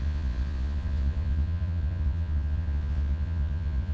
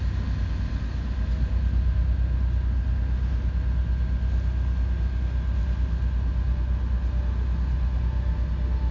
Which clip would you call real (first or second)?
second